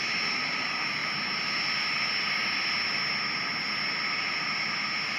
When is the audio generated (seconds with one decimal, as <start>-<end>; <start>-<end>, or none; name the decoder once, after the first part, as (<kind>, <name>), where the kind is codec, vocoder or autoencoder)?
none

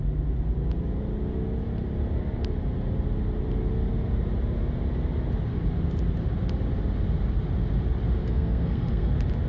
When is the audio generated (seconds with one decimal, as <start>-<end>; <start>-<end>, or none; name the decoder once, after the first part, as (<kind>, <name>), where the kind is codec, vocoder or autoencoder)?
8.2-9.1 (codec, SNAC)

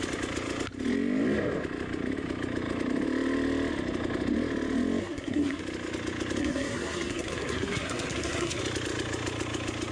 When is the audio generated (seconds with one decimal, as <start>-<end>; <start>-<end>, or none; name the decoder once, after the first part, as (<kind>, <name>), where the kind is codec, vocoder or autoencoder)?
5.0-5.6 (codec, SNAC); 6.4-8.6

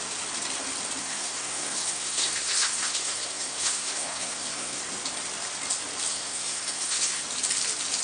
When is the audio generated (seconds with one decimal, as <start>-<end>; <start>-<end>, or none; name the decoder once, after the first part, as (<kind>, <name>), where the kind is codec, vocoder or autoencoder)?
1.0-4.8 (codec, SNAC); 6.1-7.2

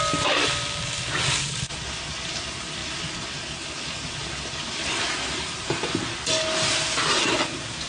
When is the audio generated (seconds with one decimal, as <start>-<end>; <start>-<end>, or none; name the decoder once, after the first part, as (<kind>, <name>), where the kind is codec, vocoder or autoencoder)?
none

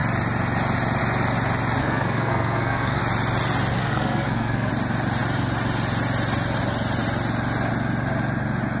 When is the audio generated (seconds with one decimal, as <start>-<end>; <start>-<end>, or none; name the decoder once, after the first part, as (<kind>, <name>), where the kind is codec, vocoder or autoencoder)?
1.8-3.0 (codec, SNAC); 3.8-4.7

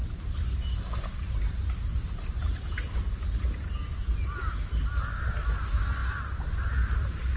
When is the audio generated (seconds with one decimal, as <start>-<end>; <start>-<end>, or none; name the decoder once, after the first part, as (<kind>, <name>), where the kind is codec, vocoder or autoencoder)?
none